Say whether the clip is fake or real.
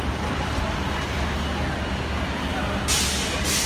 real